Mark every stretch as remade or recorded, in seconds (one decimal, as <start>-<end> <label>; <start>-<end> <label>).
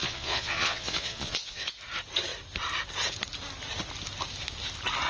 0.0-1.7 remade; 1.7-5.1 recorded